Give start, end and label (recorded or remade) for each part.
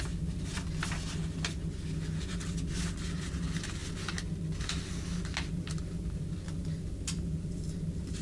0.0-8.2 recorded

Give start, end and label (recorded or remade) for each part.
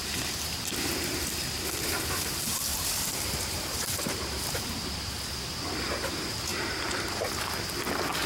0.0-0.9 remade; 0.9-2.7 recorded; 2.7-5.3 remade; 5.3-6.5 recorded; 6.5-7.3 remade; 7.3-8.3 recorded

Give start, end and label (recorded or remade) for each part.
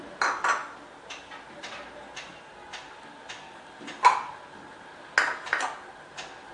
0.0-6.5 recorded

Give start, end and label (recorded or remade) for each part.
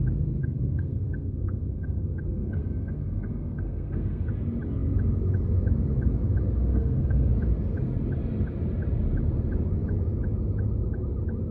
0.0-0.4 recorded; 0.4-4.3 remade; 4.3-6.7 recorded; 6.7-7.3 remade; 7.3-11.5 recorded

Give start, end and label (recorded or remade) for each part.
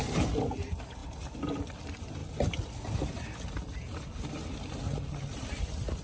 0.0-6.0 recorded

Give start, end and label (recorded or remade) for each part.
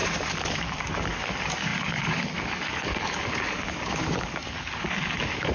0.0-5.5 remade